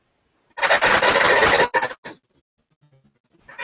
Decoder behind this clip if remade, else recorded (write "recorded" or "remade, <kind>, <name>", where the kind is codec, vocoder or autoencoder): recorded